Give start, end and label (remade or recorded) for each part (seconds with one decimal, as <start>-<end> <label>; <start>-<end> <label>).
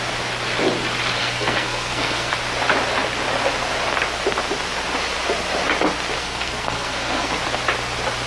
0.0-1.2 recorded; 1.2-2.3 remade; 2.3-6.2 recorded; 6.2-7.3 remade; 7.3-8.3 recorded